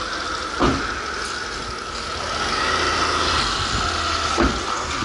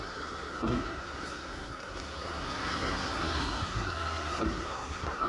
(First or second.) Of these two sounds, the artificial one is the second